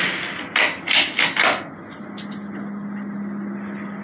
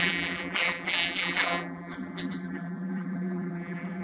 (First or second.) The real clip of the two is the first